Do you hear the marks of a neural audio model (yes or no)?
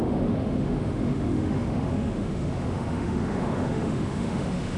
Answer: yes